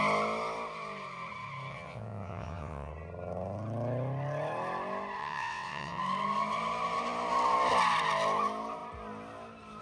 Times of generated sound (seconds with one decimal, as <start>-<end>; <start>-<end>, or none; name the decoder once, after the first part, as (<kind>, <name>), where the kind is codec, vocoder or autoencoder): 1.7-2.9 (vocoder, WaveNeXt); 5.2-6.0